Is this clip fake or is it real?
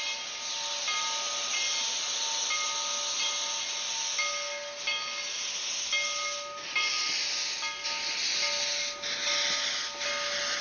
real